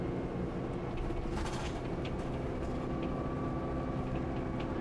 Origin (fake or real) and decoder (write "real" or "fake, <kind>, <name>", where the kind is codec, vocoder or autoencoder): real